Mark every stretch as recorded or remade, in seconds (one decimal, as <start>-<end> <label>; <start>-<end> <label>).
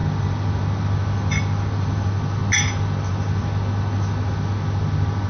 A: 0.0-5.3 recorded